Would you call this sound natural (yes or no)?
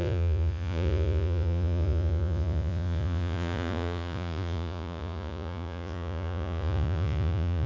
no